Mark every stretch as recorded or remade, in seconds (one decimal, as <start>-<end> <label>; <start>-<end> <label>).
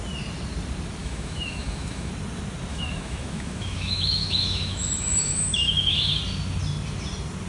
0.0-1.0 recorded; 1.0-2.1 remade; 2.1-2.7 recorded; 2.7-6.2 remade; 6.2-7.5 recorded